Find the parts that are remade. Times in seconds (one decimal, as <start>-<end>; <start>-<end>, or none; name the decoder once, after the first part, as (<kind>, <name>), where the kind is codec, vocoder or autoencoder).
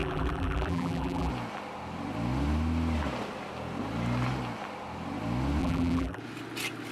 0.0-1.3 (vocoder, BigVGAN v2); 5.6-6.2